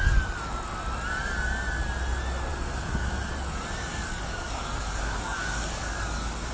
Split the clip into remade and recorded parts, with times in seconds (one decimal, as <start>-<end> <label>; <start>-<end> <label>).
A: 0.0-2.5 recorded; 2.5-3.3 remade; 3.3-3.9 recorded; 3.9-6.5 remade